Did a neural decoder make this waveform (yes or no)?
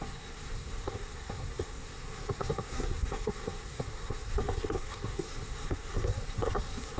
yes